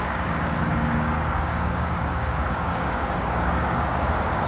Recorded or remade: remade